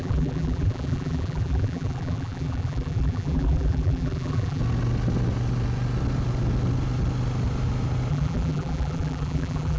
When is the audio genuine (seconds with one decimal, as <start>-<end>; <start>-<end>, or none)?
4.6-8.1